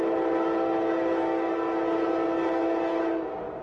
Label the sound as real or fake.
real